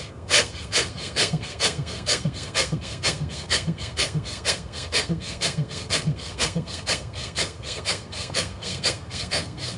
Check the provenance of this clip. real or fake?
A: fake